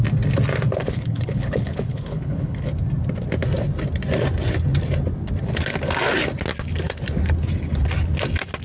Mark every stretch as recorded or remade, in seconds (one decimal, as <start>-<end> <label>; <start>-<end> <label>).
0.0-0.8 recorded; 0.8-2.7 remade; 2.7-8.6 recorded